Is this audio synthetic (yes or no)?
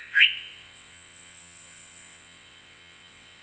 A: yes